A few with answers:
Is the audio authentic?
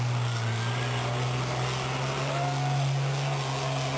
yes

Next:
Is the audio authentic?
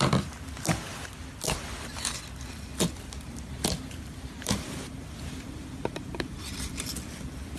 yes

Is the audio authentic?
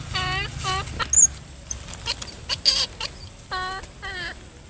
yes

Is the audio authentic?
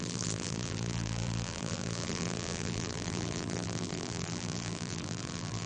no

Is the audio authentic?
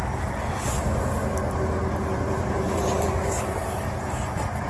yes